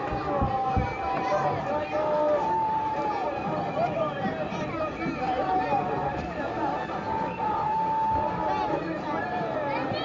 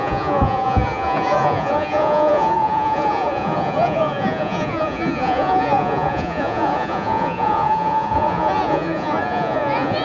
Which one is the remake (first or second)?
second